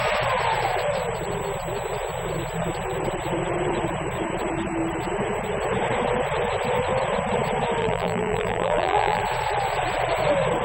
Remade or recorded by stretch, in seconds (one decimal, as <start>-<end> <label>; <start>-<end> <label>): 0.0-7.8 recorded; 7.8-9.2 remade; 9.2-10.6 recorded